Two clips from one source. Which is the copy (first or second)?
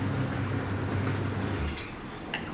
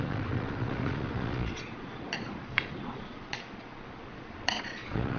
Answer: second